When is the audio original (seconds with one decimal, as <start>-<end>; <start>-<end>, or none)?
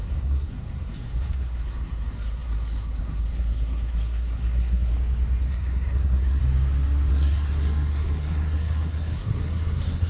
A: 4.9-5.5; 6.4-7.1